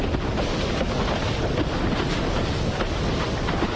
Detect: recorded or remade recorded